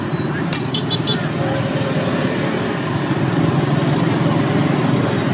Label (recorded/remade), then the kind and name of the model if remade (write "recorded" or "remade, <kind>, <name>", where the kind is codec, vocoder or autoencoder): recorded